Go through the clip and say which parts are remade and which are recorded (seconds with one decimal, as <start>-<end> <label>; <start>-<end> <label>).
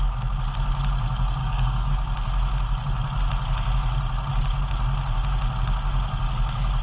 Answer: 0.0-1.4 recorded; 1.4-1.9 remade; 1.9-6.8 recorded